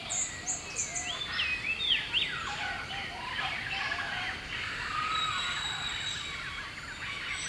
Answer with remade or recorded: remade